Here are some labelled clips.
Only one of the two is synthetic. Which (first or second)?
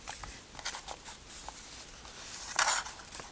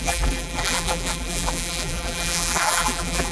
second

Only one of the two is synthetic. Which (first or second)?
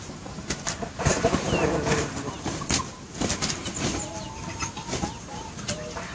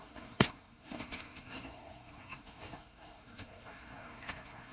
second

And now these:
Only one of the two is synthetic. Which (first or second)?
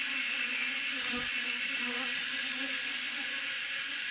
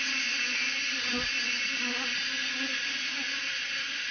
first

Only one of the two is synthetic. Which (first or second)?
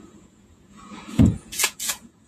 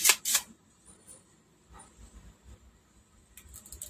first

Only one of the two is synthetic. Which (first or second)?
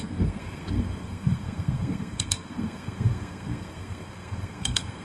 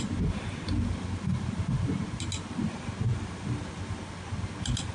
first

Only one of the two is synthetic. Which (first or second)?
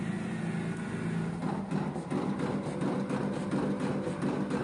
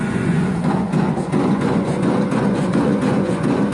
second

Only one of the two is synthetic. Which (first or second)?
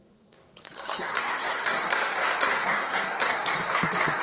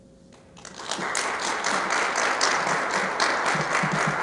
first